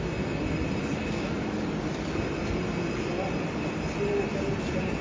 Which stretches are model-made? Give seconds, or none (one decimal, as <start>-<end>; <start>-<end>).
1.0-1.6